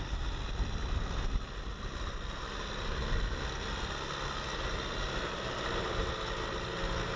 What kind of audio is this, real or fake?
real